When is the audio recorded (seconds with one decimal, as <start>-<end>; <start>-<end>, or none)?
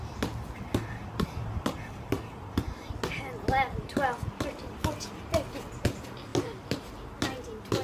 0.0-7.8